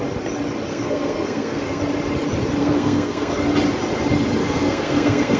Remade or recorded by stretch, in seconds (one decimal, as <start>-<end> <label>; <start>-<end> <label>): 0.0-0.7 recorded; 0.7-1.8 remade; 1.8-2.6 recorded; 2.6-3.3 remade; 3.3-4.4 recorded; 4.4-5.4 remade